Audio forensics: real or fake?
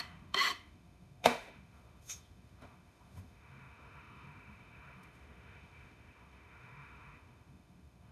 fake